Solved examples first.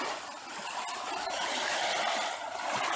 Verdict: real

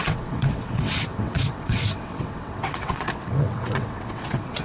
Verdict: fake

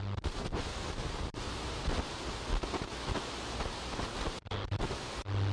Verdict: real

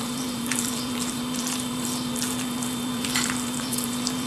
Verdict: fake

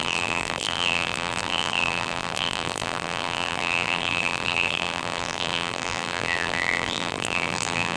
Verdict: fake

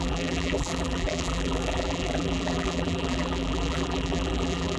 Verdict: fake